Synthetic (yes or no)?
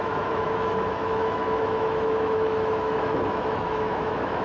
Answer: yes